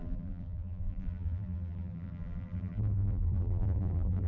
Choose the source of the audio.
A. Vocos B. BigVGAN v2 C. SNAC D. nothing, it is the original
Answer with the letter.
B